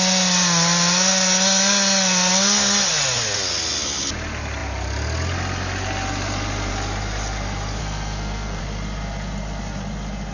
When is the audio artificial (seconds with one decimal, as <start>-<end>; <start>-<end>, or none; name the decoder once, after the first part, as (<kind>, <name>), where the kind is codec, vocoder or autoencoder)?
7.8-8.6 (codec, SNAC)